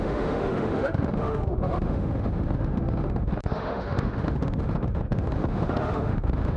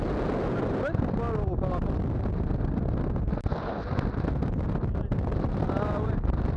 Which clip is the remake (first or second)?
first